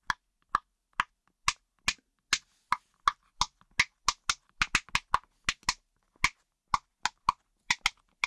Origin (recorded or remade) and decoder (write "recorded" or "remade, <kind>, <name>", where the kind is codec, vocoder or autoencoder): recorded